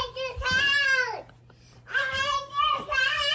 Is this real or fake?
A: fake